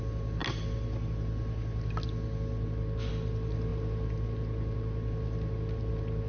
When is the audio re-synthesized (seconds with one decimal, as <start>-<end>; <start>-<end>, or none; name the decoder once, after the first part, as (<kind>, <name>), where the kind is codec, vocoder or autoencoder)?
0.0-0.4 (vocoder, BigVGAN v2); 3.1-3.7